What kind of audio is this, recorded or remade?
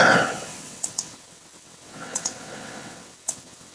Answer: remade